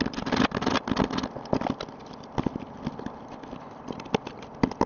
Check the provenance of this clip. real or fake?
real